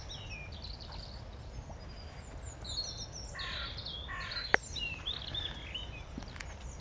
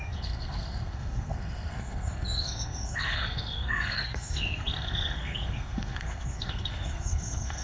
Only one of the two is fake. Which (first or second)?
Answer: second